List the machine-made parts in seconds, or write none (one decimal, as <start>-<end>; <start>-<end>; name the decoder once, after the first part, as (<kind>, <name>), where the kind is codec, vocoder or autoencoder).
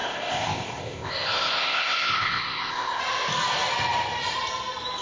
0.0-3.0 (codec, ZipCodec)